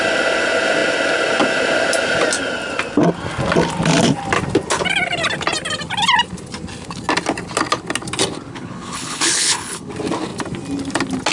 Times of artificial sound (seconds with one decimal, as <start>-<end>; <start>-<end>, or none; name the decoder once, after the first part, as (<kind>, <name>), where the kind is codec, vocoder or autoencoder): 8.5-9.9 (codec, HILCodec)